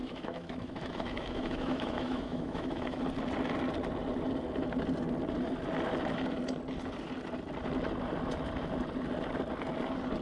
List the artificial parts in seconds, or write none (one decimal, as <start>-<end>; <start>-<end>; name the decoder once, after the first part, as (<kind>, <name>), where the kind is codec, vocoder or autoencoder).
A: 0.0-3.0 (autoencoder, DAC-VAE)